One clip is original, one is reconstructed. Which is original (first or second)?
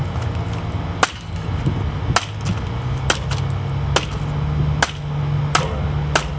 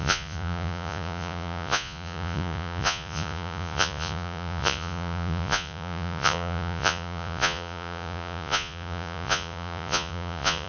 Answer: first